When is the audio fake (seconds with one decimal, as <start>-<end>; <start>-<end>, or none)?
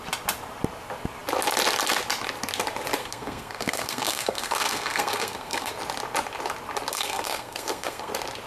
3.0-5.7; 6.9-8.1